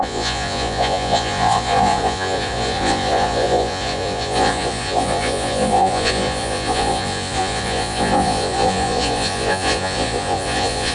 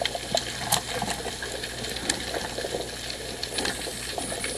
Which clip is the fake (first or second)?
first